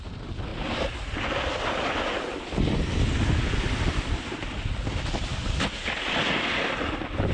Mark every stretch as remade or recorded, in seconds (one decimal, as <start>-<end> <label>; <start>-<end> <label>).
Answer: 0.0-7.3 recorded